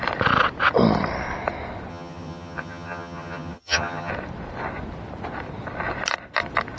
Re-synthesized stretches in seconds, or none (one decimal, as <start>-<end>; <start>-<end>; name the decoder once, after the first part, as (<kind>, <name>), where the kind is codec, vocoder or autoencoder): 1.9-4.1 (vocoder, HiFi-GAN)